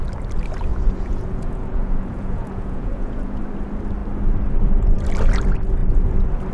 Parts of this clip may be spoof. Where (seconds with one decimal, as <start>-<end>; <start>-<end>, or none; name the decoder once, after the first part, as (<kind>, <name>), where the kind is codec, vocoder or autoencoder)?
0.7-3.4 (vocoder, Vocos)